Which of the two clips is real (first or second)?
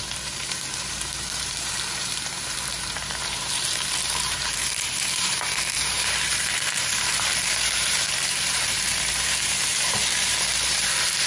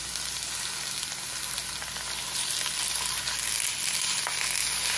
second